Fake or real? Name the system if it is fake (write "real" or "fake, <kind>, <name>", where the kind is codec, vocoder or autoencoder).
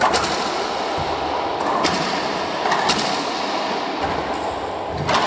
real